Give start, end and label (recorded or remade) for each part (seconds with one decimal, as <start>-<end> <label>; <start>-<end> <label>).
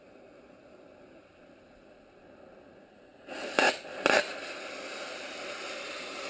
0.0-6.3 recorded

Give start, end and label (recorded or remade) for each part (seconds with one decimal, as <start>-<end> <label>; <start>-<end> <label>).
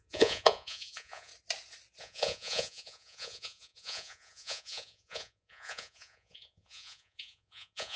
0.0-1.3 remade; 1.3-2.0 recorded; 2.0-8.0 remade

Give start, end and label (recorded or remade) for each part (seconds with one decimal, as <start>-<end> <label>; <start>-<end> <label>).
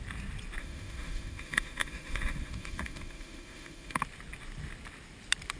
0.0-0.6 recorded; 0.6-4.0 remade; 4.0-5.6 recorded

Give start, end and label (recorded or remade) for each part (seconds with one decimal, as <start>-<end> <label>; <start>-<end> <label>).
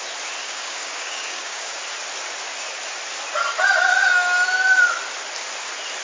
0.0-0.4 recorded; 0.4-1.8 remade; 1.8-6.0 recorded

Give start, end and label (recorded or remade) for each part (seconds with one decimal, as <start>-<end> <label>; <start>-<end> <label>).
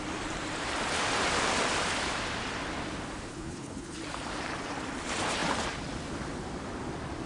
0.0-3.3 recorded; 3.3-4.0 remade; 4.0-7.3 recorded